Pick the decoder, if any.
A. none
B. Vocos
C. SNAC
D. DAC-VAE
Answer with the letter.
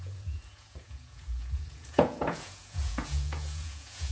B